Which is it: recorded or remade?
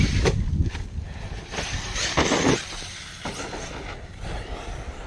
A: recorded